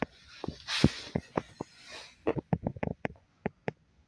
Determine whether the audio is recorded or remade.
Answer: remade